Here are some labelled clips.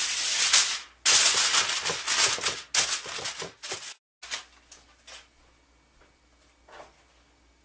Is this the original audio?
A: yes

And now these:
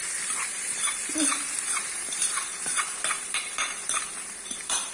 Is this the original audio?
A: no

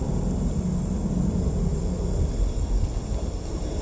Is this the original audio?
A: yes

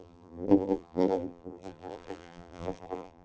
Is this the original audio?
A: no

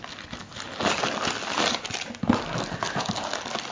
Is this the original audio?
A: yes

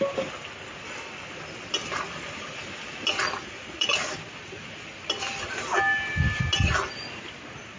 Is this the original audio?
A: yes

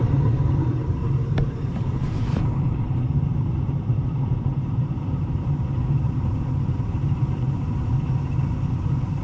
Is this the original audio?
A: no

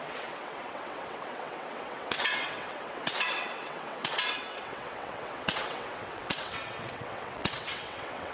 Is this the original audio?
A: no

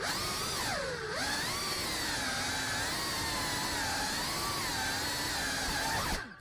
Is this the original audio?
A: yes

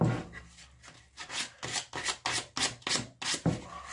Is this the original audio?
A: yes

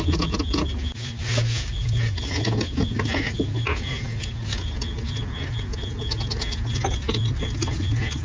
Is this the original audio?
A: yes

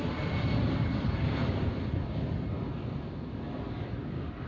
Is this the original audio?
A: yes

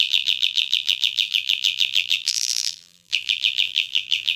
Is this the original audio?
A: no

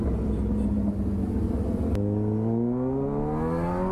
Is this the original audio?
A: yes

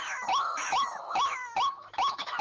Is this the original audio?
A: no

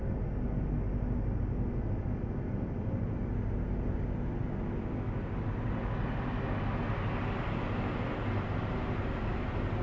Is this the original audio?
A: yes